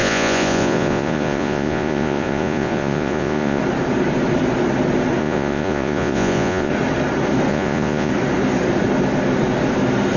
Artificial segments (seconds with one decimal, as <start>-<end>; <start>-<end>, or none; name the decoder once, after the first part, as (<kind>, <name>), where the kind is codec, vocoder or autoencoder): 0.0-3.6 (vocoder, Vocos); 5.2-6.7; 7.5-8.1